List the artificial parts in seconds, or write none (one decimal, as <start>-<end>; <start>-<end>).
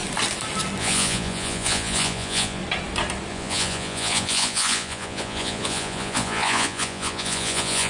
0.8-2.6; 3.3-7.9